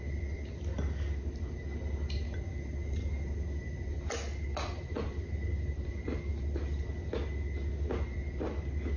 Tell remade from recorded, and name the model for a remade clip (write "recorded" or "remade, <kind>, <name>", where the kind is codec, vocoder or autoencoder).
recorded